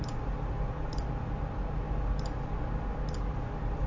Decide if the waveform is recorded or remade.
recorded